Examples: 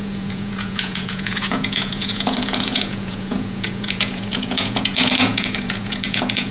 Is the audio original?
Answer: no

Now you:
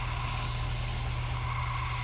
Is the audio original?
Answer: yes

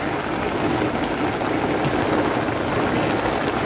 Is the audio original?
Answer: yes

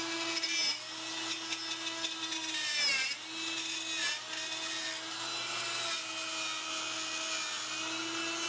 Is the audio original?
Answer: yes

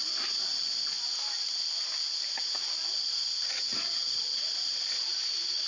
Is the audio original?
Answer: yes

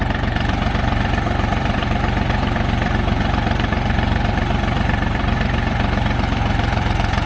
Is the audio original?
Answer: no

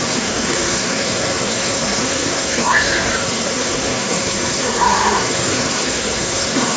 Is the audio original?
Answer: no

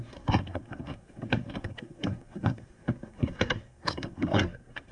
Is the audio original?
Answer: no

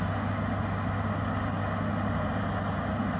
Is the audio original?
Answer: yes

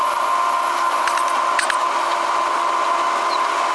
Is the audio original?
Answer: yes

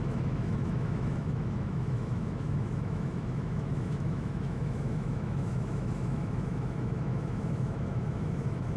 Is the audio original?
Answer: no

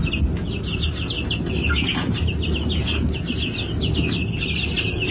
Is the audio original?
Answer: yes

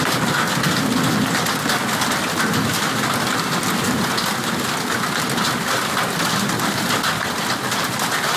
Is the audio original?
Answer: yes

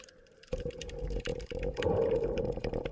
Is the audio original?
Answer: no